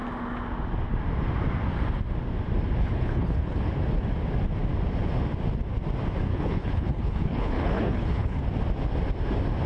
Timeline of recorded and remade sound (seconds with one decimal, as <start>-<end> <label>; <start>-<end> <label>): 0.0-2.8 recorded; 2.8-3.7 remade; 3.7-6.3 recorded; 6.3-8.4 remade; 8.4-9.7 recorded